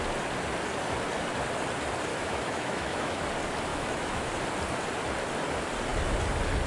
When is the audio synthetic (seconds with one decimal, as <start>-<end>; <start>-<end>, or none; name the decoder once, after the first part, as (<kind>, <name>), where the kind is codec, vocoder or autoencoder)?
2.1-3.2 (autoencoder, DAC-VAE); 3.7-4.3